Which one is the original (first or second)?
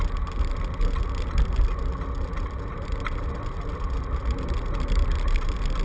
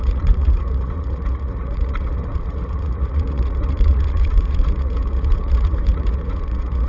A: first